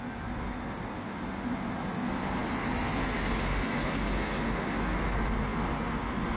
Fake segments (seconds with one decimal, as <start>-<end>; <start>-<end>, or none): none

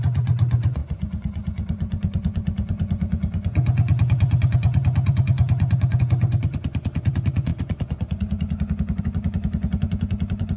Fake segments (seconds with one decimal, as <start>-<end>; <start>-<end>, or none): 0.0-10.6

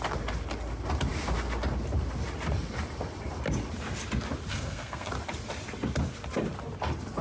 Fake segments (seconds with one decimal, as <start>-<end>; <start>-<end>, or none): 4.5-5.1

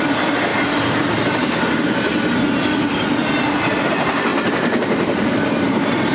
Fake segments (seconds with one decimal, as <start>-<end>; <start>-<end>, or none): 0.0-0.5; 3.9-6.1

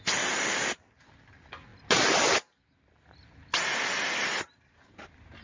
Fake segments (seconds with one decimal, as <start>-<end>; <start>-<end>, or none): none